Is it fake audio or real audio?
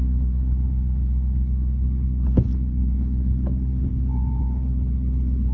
fake